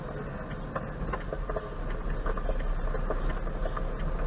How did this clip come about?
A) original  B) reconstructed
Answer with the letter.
A